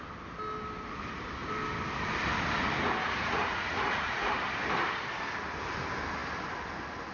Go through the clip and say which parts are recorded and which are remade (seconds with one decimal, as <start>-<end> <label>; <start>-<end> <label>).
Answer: 0.0-3.0 recorded; 3.0-4.3 remade; 4.3-7.1 recorded